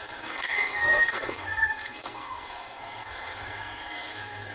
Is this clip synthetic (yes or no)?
yes